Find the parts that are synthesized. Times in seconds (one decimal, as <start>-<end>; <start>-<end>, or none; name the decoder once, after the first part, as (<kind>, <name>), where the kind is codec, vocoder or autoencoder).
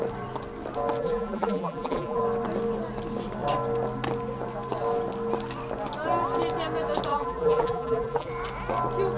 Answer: 1.0-2.2 (vocoder, BigVGAN v2); 7.1-8.3